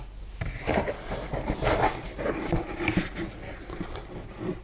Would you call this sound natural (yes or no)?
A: yes